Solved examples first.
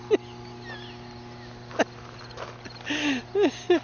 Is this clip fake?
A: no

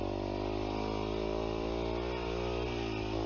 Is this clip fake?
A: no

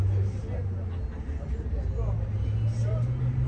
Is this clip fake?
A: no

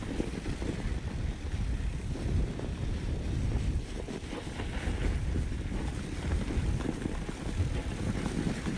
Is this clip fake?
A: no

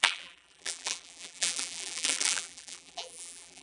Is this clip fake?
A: yes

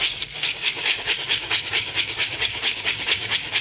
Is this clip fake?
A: yes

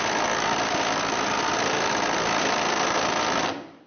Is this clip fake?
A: no